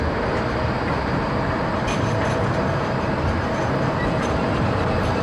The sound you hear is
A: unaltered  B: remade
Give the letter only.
B